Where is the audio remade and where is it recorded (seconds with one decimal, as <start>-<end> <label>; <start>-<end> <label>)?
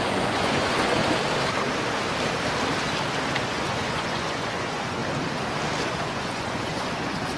0.0-1.0 remade; 1.0-3.4 recorded; 3.4-5.0 remade; 5.0-5.8 recorded; 5.8-7.4 remade